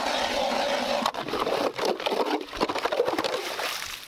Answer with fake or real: real